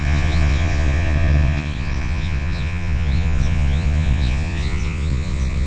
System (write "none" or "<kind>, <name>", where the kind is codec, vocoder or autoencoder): vocoder, Vocos